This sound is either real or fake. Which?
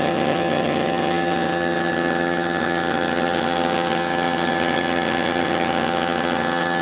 fake